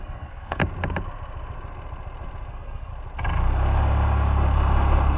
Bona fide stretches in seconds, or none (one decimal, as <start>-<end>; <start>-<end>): 0.6-2.5; 2.9-5.2